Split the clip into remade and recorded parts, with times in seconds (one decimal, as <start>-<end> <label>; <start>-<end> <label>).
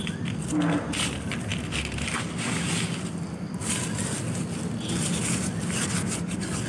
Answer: 0.0-6.7 recorded